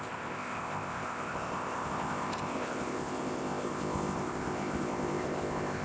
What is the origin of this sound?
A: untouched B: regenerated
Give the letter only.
B